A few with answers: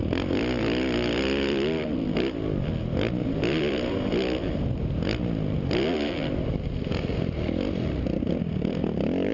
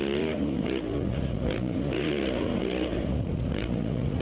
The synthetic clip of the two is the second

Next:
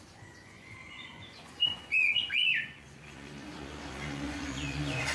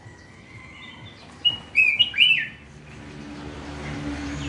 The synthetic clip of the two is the first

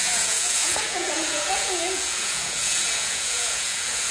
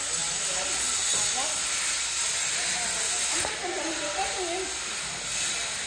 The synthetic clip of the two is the first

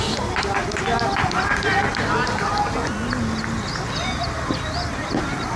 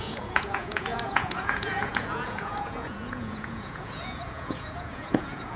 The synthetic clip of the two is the second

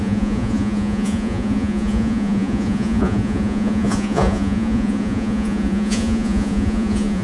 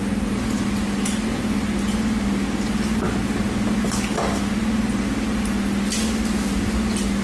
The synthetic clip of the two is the first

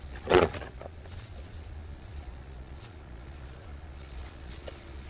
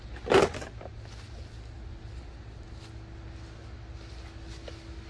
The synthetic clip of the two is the first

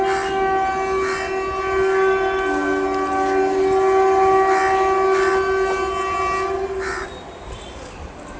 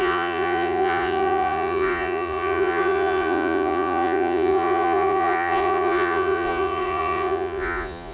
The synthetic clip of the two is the second